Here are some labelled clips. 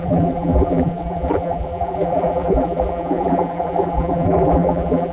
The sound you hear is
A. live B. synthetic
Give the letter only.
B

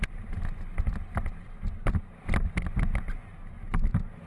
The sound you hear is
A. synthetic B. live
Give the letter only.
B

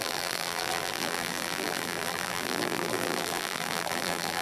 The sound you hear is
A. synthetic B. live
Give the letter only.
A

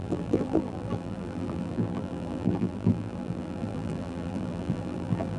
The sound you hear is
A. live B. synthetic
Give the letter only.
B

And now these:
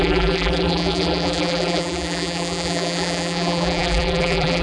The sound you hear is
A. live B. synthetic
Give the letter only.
B